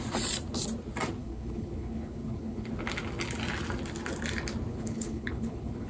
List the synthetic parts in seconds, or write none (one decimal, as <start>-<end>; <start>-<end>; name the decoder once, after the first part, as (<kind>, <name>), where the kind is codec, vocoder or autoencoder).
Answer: 1.2-2.7 (codec, HILCodec); 4.7-5.9